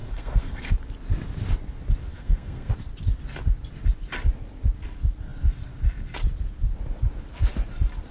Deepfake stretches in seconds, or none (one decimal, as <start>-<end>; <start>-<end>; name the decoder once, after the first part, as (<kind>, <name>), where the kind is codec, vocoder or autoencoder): 0.0-0.7 (codec, SNAC); 2.1-2.7